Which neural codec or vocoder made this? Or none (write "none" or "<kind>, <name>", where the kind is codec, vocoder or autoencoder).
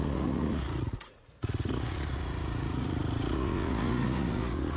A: vocoder, Vocos